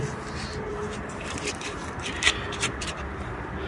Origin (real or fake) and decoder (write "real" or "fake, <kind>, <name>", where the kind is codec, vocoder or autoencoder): fake, vocoder, BigVGAN v2